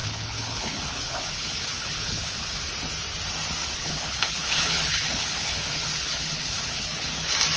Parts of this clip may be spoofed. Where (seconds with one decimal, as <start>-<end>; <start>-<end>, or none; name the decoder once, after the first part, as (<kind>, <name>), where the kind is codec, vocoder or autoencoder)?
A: 0.0-2.6 (codec, HILCodec); 3.6-7.1